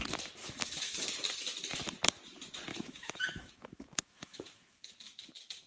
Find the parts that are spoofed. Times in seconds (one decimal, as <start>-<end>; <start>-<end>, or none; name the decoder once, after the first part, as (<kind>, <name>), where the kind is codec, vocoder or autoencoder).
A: 0.4-1.1 (autoencoder, DAC-VAE); 2.7-4.9